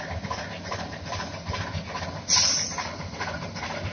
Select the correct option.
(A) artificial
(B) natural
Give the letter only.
B